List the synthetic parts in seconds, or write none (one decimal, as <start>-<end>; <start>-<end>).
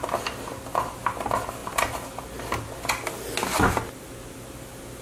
none